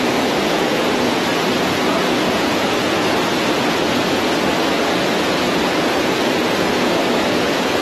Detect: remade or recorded remade